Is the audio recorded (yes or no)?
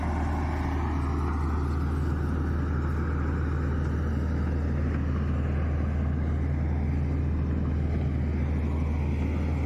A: yes